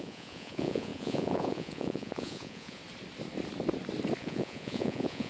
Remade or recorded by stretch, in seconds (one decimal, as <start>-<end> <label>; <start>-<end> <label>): 0.0-2.8 remade; 2.8-4.2 recorded; 4.2-5.3 remade